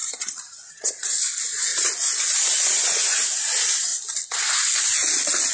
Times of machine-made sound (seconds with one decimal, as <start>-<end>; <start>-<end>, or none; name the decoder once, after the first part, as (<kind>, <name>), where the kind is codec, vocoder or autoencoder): 0.0-0.9 (vocoder, Vocos)